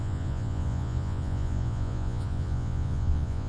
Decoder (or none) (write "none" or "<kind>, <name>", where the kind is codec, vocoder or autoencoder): vocoder, Vocos